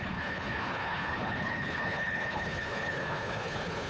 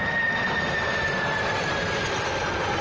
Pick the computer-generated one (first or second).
first